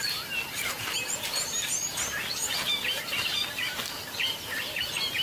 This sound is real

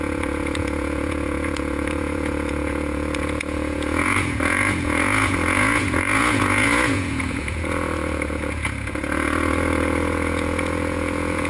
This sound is fake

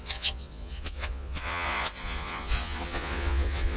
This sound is fake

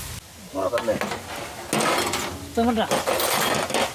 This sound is real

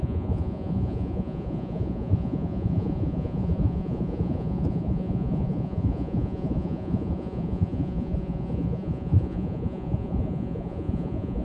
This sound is fake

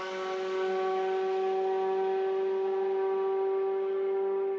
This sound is real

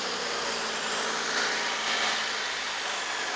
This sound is real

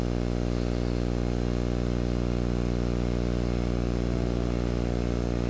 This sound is real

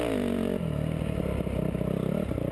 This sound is real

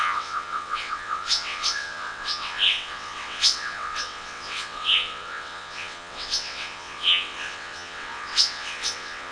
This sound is fake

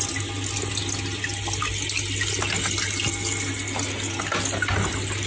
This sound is real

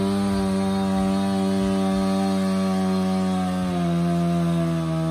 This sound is real